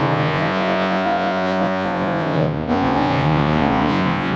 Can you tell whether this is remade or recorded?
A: remade